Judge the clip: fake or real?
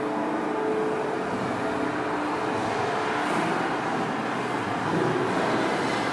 real